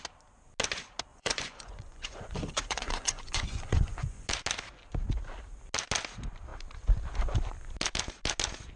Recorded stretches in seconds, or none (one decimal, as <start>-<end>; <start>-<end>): 0.0-1.1; 4.3-8.8